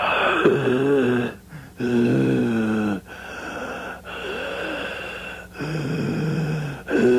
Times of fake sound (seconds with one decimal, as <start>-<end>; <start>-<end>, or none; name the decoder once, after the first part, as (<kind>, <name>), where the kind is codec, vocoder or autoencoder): 0.0-2.4 (vocoder, BigVGAN v2); 5.2-7.2